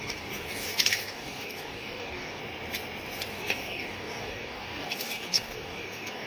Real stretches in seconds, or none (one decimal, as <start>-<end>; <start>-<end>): 2.4-3.3

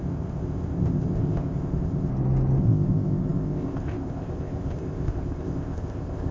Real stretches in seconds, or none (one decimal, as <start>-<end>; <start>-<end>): 2.1-2.6